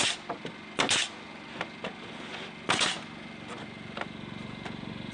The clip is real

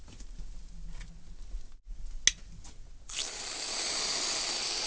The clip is real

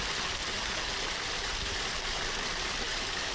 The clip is real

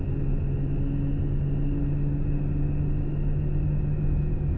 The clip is real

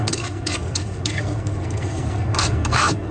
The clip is fake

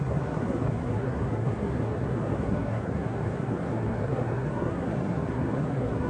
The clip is fake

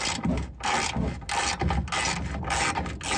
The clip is real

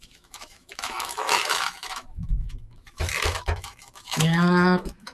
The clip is fake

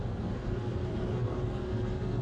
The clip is fake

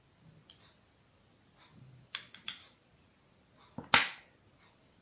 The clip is real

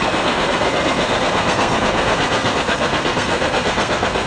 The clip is fake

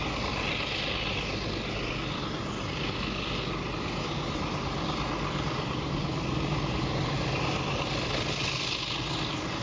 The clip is real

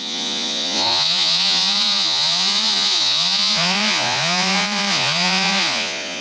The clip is fake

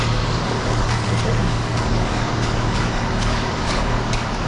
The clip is fake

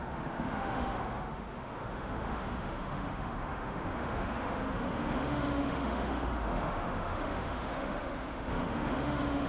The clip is fake